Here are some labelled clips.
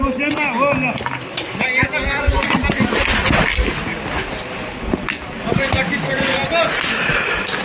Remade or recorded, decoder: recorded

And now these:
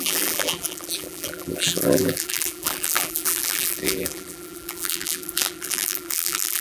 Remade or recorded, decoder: remade, vocoder, BigVGAN v2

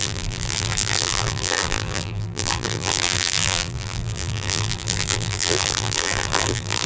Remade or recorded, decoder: remade, vocoder, BigVGAN v2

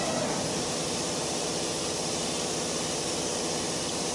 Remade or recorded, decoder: remade, vocoder, BigVGAN v2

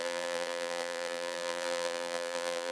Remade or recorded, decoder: remade, vocoder, BigVGAN v2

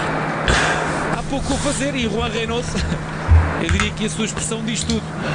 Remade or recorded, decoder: recorded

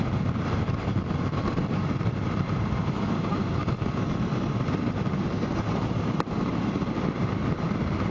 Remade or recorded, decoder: remade, vocoder, BigVGAN v2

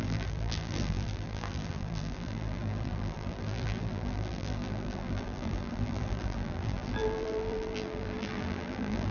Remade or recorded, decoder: remade, vocoder, BigVGAN v2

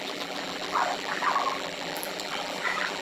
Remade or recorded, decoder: remade, vocoder, BigVGAN v2